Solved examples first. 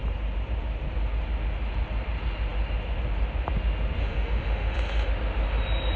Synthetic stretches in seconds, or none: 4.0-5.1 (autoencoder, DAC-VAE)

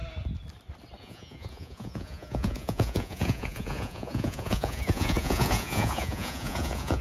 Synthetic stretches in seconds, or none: 1.0-7.0 (vocoder, Vocos)

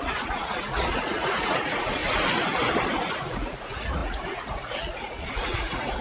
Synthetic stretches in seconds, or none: 0.0-2.0 (vocoder, Vocos); 3.1-6.0

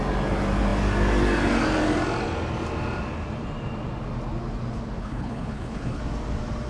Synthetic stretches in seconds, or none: 5.0-6.0 (codec, HILCodec)